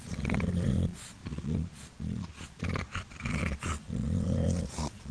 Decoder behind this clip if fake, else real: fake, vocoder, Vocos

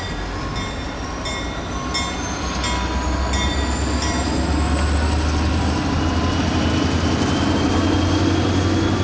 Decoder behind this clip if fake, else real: real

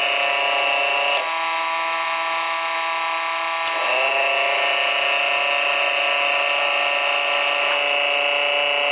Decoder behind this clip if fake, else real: real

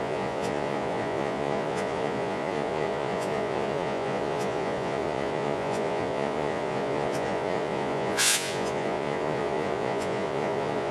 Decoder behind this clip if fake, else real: fake, vocoder, Vocos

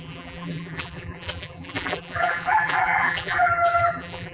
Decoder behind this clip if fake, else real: fake, vocoder, BigVGAN v2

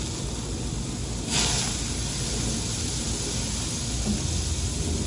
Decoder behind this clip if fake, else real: real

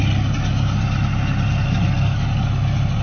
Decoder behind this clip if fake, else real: real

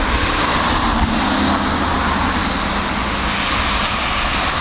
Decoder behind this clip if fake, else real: real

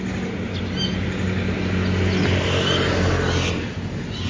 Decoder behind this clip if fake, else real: real